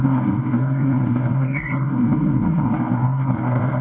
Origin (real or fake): fake